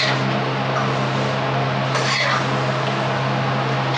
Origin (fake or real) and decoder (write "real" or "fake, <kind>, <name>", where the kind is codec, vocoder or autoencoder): real